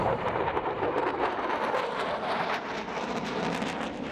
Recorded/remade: remade